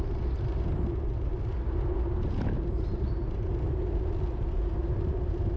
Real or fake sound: real